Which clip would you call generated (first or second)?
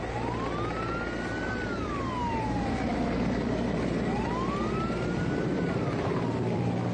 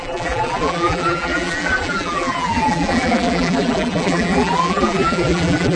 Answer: second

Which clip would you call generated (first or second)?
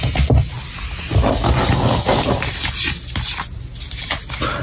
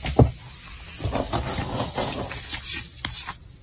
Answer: second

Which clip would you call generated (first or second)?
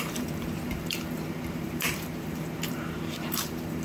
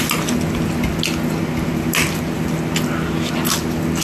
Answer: first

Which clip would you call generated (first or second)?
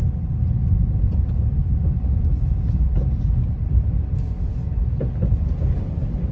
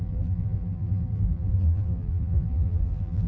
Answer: second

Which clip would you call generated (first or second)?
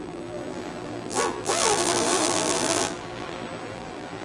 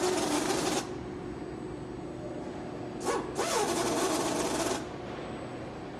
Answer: first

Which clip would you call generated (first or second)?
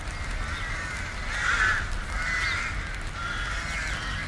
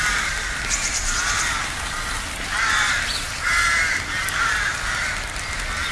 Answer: second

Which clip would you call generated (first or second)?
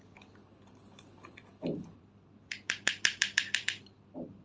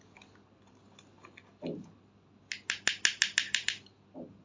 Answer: first